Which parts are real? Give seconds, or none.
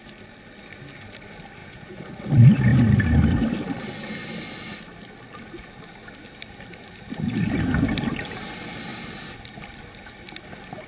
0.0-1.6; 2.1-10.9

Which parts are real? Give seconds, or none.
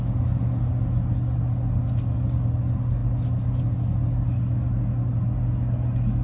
0.0-6.2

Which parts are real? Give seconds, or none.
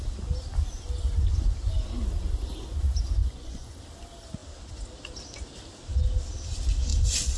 0.0-3.2; 3.8-7.4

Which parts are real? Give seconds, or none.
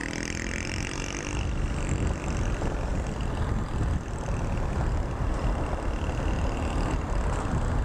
0.0-7.8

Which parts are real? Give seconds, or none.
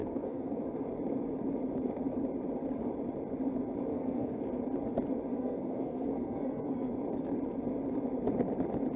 0.6-3.9; 4.4-5.3; 6.9-9.0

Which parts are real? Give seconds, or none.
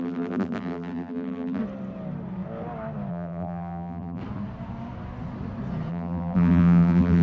1.6-3.1; 4.2-5.9